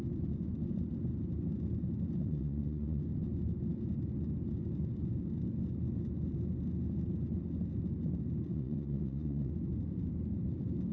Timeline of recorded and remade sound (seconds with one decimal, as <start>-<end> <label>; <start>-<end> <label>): 0.0-2.2 recorded; 2.2-3.0 remade; 3.0-8.5 recorded; 8.5-9.5 remade; 9.5-10.9 recorded